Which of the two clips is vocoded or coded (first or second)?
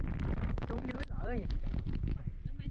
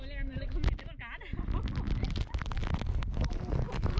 first